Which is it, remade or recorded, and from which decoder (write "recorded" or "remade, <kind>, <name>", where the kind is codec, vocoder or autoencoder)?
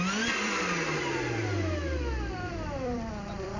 remade, vocoder, BigVGAN v2